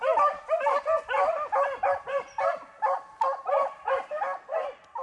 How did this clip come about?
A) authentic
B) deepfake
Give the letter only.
A